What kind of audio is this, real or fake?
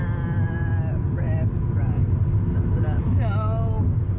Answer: real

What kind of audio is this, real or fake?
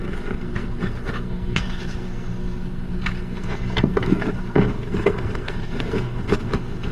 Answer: fake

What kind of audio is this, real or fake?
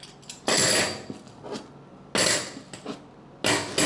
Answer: real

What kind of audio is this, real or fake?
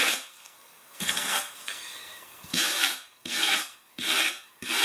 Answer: fake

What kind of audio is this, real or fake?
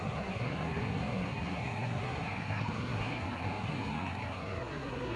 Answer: fake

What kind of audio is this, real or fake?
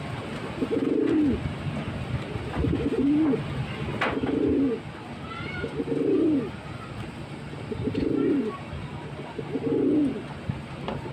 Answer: real